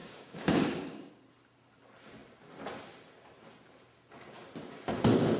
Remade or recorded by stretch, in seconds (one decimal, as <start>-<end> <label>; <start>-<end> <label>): 0.0-1.1 remade; 1.1-5.4 recorded